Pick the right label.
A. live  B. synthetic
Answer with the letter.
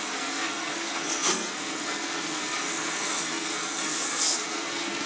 B